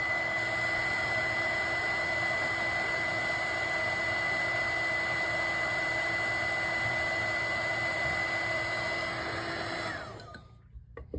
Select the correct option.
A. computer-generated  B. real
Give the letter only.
B